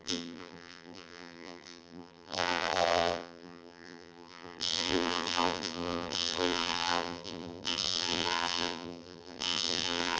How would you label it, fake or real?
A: fake